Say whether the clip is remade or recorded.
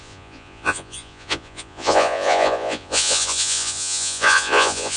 remade